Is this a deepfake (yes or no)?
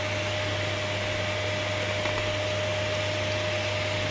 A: no